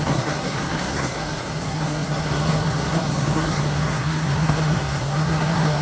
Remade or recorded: remade